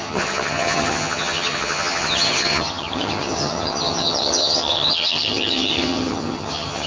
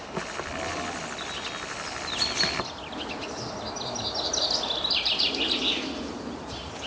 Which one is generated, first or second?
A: first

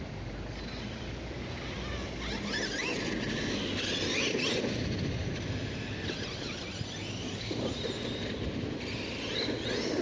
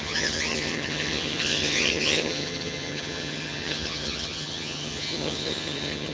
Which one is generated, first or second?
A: second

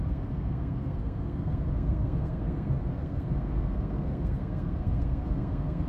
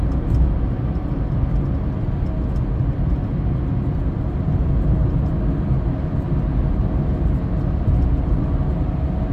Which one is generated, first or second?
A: first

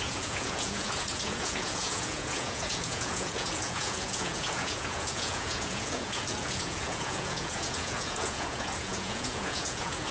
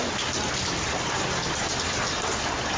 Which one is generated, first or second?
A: first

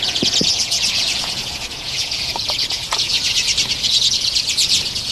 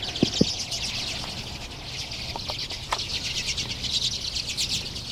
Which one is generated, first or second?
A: first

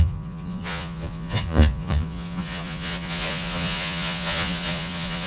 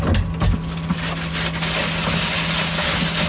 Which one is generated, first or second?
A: first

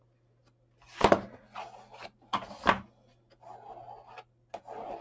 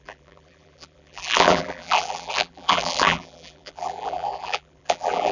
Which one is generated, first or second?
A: second